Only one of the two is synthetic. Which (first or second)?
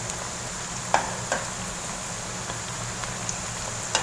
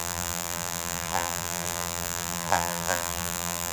second